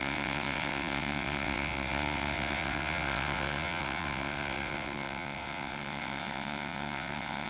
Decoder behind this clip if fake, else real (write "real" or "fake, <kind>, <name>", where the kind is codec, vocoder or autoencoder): fake, vocoder, WaveNeXt